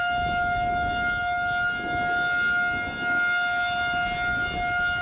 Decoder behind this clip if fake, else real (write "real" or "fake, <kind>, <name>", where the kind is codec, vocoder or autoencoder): real